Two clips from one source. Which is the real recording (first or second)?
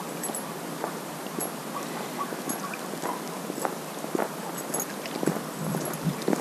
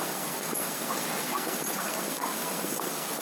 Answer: first